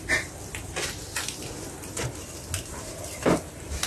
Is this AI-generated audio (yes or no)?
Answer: no